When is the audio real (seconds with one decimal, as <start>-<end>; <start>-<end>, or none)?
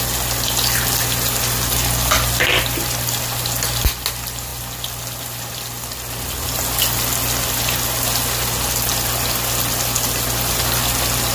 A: 0.0-11.3